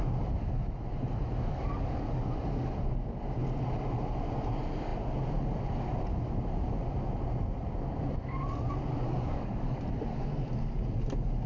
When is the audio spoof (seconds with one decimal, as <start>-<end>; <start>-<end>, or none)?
1.4-2.3; 9.1-9.8